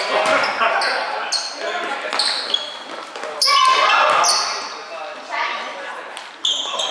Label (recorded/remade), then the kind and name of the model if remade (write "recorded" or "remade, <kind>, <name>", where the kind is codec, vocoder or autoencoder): recorded